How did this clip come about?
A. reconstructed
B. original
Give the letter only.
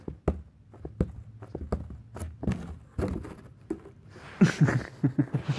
B